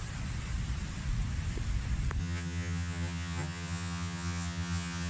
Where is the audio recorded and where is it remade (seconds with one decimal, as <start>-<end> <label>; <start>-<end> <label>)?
0.0-2.2 recorded; 2.2-5.1 remade